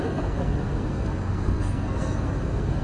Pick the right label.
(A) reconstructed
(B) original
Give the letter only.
A